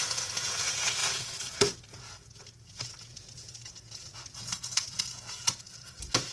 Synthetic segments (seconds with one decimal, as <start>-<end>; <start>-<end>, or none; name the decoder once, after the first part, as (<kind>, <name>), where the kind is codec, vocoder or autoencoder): 0.0-6.3 (vocoder, Vocos)